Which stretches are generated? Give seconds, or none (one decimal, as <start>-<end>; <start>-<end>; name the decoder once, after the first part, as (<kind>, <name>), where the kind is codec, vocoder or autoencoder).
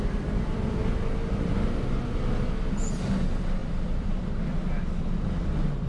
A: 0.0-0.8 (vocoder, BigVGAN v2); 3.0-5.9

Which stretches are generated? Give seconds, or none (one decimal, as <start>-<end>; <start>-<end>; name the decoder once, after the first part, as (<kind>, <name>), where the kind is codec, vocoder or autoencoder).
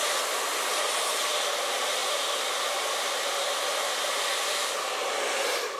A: 0.0-5.8 (vocoder, BigVGAN v2)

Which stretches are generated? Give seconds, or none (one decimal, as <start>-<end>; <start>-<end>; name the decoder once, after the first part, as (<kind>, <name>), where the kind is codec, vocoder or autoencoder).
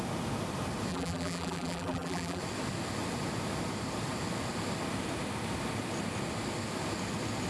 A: 0.9-2.4 (vocoder, BigVGAN v2)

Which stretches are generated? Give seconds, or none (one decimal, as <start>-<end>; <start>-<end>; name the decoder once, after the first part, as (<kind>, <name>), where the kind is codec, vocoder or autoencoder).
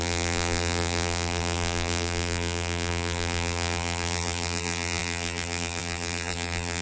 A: 0.0-6.8 (vocoder, BigVGAN v2)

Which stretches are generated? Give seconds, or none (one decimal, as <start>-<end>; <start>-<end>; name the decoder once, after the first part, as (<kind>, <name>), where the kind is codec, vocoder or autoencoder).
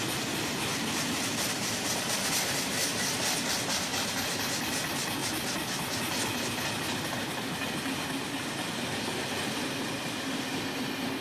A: 0.7-3.5 (vocoder, BigVGAN v2); 5.2-6.0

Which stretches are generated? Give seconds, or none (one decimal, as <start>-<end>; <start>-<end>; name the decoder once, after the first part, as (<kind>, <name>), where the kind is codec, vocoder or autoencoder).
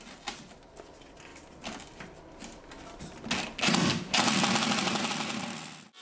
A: none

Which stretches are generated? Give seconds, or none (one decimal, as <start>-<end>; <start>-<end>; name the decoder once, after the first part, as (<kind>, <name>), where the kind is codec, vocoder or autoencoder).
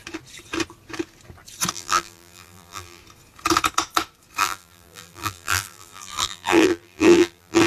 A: 1.7-3.0 (vocoder, BigVGAN v2); 4.4-7.7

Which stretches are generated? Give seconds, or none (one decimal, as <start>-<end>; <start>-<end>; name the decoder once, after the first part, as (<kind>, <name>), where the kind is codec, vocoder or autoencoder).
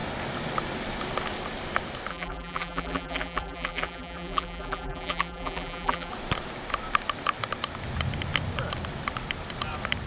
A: 2.1-6.1 (vocoder, BigVGAN v2)